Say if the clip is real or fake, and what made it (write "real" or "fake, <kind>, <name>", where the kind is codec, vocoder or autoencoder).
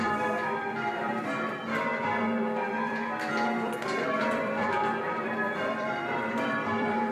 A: fake, vocoder, BigVGAN v2